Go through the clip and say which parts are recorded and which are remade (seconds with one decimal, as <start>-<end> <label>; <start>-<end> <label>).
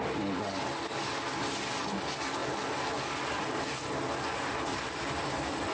0.0-5.7 recorded